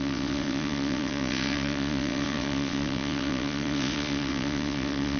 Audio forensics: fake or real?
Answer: fake